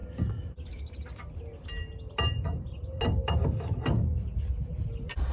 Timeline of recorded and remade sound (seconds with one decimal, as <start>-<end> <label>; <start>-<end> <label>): 0.0-5.3 recorded